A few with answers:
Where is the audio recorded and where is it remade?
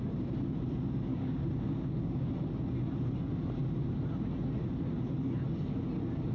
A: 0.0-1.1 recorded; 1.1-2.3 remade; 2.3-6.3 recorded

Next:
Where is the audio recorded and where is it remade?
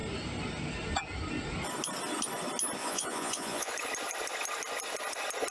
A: 0.0-2.8 recorded; 2.8-3.7 remade; 3.7-5.5 recorded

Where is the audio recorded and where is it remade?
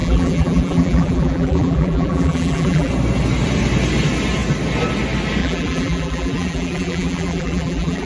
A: 0.0-2.9 remade; 2.9-5.4 recorded; 5.4-8.1 remade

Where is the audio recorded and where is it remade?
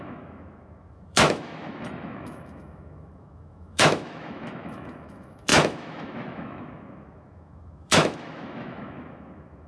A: 0.0-9.7 remade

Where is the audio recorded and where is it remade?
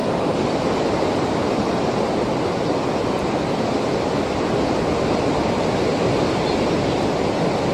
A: 0.0-2.0 remade; 2.0-7.7 recorded